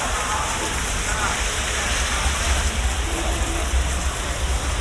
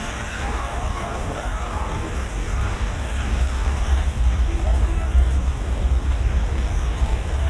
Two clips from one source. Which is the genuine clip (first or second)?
first